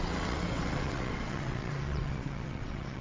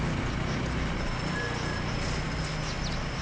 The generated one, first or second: first